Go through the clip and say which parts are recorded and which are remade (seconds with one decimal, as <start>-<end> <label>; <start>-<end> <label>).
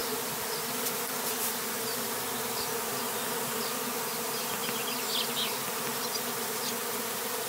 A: 0.0-7.5 recorded